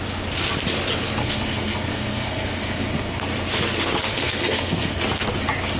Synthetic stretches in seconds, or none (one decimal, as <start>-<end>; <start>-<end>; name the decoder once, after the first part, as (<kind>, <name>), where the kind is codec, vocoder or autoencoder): 1.2-3.2 (codec, SNAC); 4.1-5.0